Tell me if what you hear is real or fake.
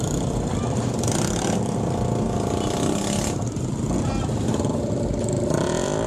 real